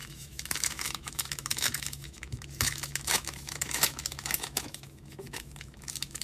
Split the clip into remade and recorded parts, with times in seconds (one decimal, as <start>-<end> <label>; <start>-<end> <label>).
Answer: 0.0-6.2 remade